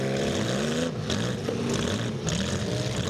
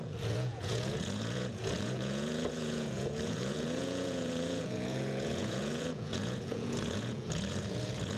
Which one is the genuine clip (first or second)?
first